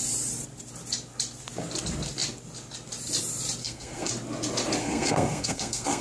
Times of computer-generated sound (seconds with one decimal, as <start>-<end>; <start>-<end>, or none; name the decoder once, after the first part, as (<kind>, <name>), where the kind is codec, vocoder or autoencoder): 3.6-4.1 (codec, SNAC); 4.8-6.0